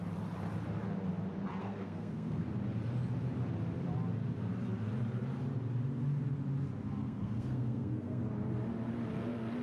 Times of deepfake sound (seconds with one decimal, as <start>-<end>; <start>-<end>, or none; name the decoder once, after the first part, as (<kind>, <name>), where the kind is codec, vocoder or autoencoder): 1.6-2.4 (codec, SNAC); 7.0-8.2